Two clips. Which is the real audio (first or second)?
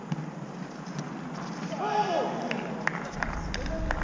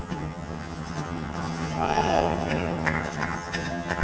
first